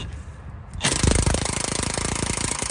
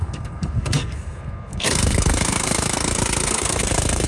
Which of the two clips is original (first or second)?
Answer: first